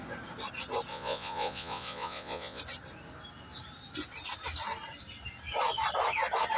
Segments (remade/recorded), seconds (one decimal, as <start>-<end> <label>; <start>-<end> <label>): 0.0-0.9 recorded; 0.9-2.6 remade; 2.6-6.6 recorded